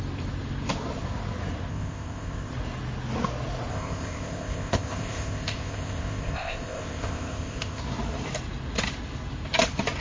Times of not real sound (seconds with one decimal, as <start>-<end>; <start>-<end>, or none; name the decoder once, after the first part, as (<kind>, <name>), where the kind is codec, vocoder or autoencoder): 1.7-2.5 (codec, ZipCodec); 3.7-7.8